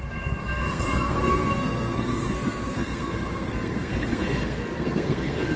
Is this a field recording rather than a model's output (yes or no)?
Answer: no